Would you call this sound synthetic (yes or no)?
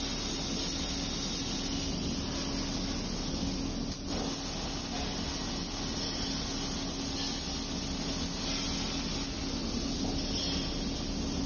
no